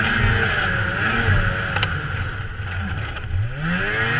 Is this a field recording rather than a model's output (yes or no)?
yes